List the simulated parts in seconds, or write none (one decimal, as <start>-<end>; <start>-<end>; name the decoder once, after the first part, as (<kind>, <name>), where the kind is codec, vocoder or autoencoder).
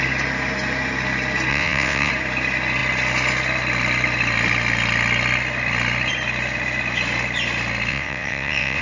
1.5-2.1 (vocoder, WaveNeXt); 7.9-8.8